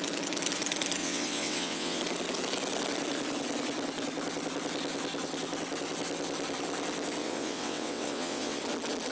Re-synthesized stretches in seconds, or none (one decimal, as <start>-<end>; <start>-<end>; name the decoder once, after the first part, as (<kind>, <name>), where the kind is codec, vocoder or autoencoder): 1.0-2.0 (vocoder, WaveNeXt); 7.2-8.6